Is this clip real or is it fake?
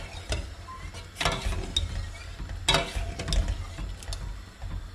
real